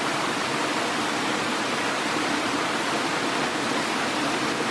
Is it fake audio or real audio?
real